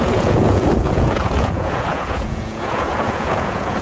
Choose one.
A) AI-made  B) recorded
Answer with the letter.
A